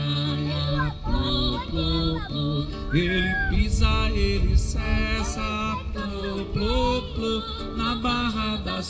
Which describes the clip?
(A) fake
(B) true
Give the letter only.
B